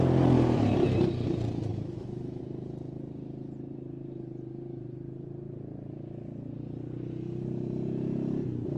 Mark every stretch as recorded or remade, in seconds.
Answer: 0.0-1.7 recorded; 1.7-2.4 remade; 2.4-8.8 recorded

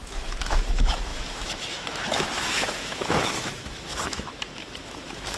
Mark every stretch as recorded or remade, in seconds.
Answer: 0.0-5.4 remade

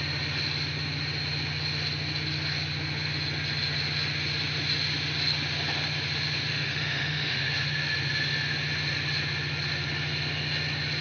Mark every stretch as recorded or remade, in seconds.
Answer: 0.0-6.5 recorded; 6.5-7.5 remade; 7.5-11.0 recorded

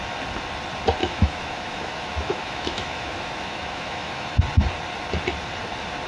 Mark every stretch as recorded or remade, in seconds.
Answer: 0.0-1.0 recorded; 1.0-4.4 remade; 4.4-6.1 recorded

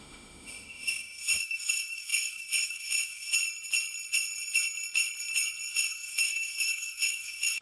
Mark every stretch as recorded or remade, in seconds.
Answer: 0.0-3.3 remade; 3.3-5.7 recorded; 5.7-7.6 remade

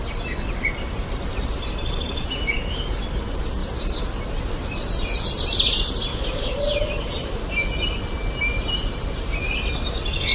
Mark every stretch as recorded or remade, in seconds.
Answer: 0.0-6.1 recorded; 6.1-6.6 remade; 6.6-10.3 recorded

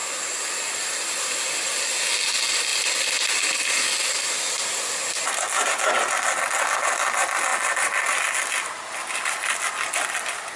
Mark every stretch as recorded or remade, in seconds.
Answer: 0.0-10.6 recorded

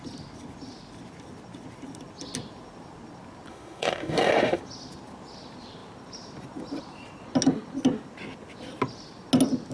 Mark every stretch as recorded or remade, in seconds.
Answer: 0.0-3.5 recorded; 3.5-4.6 remade; 4.6-9.7 recorded